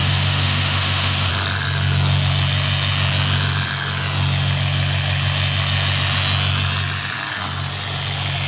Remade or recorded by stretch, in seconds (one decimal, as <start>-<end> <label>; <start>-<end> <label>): 0.0-1.3 remade; 1.3-8.5 recorded